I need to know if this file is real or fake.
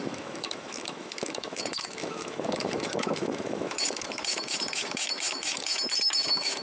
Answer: fake